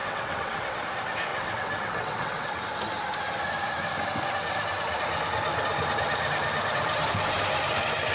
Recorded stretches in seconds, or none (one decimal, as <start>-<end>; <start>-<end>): 0.8-1.3; 2.6-8.1